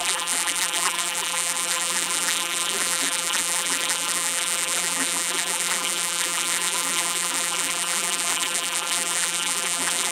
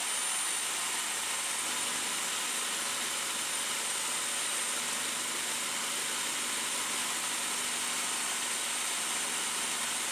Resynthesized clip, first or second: first